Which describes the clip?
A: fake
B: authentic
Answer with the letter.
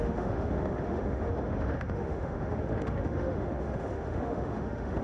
A